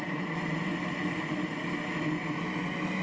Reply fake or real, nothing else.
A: fake